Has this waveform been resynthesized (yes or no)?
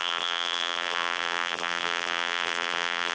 yes